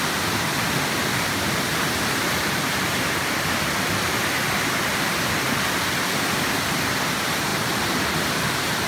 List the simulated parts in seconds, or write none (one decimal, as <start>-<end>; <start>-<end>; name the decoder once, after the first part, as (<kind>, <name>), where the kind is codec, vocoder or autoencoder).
none